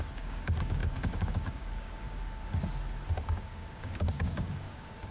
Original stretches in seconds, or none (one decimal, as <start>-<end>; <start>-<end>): 2.4-3.1